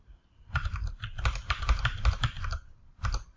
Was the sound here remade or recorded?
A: remade